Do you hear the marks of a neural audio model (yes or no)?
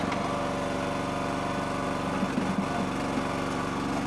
no